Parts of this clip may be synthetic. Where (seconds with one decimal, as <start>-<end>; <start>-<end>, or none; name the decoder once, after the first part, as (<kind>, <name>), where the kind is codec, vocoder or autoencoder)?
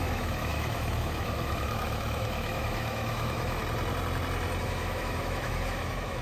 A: 0.0-3.6 (autoencoder, DAC-VAE); 4.6-6.2